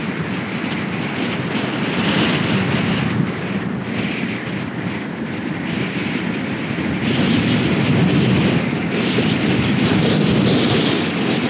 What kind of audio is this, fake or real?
real